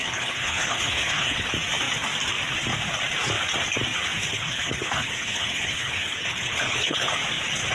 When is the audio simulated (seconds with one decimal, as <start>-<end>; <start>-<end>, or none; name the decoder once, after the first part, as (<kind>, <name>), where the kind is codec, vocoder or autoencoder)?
0.0-1.5 (codec, HILCodec); 4.2-7.1